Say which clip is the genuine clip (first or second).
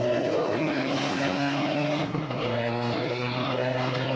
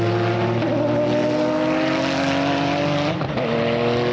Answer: second